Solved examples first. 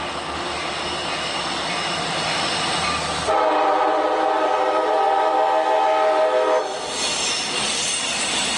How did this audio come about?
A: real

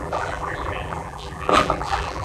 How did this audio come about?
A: fake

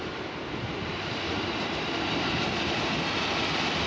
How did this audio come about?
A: real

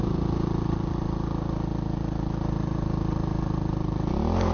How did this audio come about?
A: real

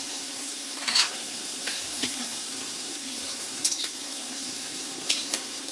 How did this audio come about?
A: fake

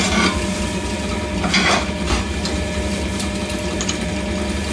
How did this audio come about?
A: real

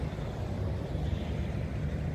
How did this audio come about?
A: fake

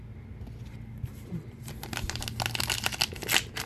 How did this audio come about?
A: real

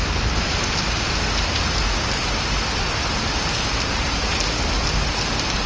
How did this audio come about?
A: real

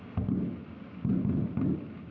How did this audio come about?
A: real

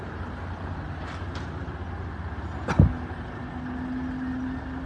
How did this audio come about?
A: real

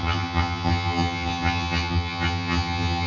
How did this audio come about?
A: fake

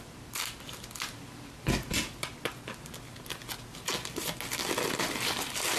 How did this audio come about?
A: real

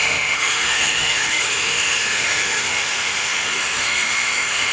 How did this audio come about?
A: fake